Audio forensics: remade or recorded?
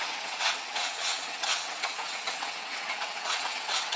remade